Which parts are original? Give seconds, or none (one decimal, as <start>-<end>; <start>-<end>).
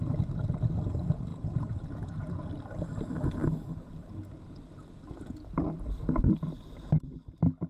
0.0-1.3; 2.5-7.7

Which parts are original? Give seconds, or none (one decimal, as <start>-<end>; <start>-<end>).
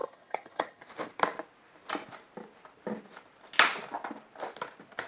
0.8-5.1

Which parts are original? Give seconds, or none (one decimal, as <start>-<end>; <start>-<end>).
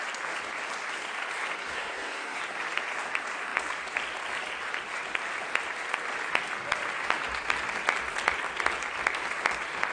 0.0-1.6; 2.4-9.9